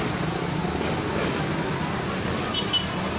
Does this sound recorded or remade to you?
recorded